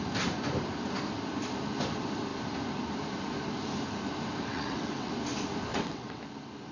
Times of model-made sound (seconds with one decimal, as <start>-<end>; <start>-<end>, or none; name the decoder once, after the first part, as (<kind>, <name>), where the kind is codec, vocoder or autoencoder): 4.5-5.1 (vocoder, WaveNeXt); 5.7-6.2